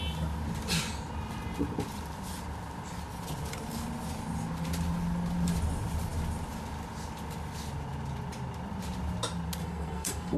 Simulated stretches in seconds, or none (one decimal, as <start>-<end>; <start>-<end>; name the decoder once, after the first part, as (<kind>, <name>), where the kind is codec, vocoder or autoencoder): 9.6-10.4 (codec, SNAC)